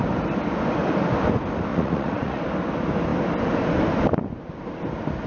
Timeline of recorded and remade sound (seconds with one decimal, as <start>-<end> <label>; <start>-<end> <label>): 0.0-1.7 recorded; 1.7-2.4 remade; 2.4-5.3 recorded